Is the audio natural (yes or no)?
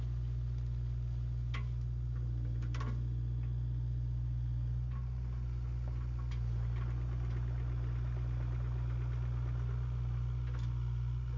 yes